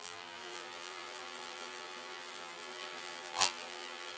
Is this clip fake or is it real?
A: fake